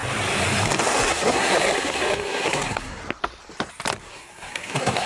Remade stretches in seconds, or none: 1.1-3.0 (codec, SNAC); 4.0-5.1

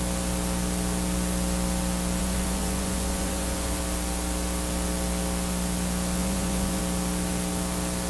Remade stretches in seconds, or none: 2.2-3.8 (vocoder, Vocos); 6.2-6.8